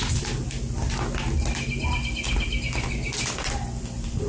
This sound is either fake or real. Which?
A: real